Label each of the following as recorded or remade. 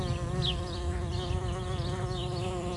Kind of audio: recorded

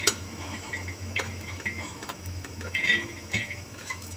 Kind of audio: remade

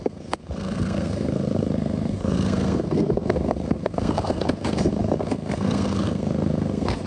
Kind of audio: remade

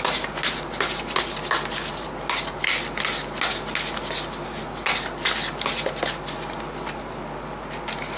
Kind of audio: recorded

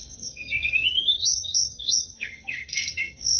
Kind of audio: remade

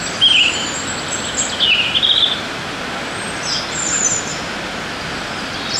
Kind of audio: recorded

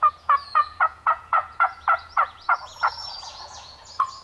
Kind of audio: remade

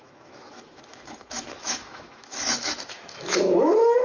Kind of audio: remade